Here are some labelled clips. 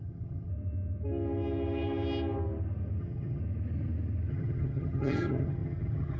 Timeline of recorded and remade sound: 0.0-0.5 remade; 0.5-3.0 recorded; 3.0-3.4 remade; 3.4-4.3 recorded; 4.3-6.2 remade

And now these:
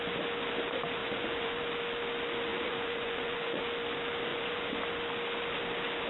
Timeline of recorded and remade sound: 0.0-1.0 recorded; 1.0-1.6 remade; 1.6-2.5 recorded; 2.5-3.6 remade; 3.6-4.3 recorded; 4.3-4.8 remade; 4.8-6.1 recorded

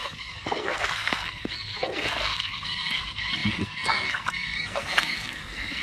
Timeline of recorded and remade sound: 0.0-5.8 remade

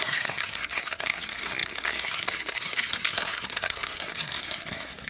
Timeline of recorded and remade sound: 0.0-5.1 remade

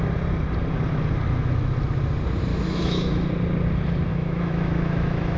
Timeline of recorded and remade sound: 0.0-2.5 recorded; 2.5-3.3 remade; 3.3-4.1 recorded; 4.1-5.4 remade

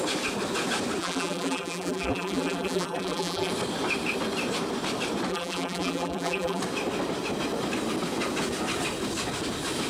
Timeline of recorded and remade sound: 0.0-1.0 recorded; 1.0-3.5 remade; 3.5-5.3 recorded; 5.3-6.6 remade; 6.6-9.9 recorded